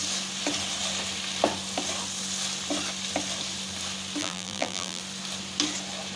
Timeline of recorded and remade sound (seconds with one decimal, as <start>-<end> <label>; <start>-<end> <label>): 0.0-4.2 recorded; 4.2-5.0 remade; 5.0-6.2 recorded